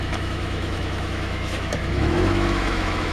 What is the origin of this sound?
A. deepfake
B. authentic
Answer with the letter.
A